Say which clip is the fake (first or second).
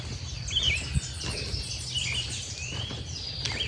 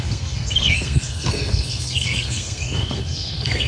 second